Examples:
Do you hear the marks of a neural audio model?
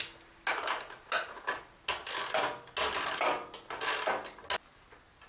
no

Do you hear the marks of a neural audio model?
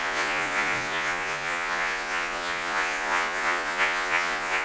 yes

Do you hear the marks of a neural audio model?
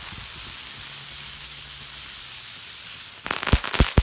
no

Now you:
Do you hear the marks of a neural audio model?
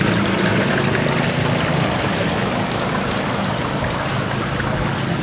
no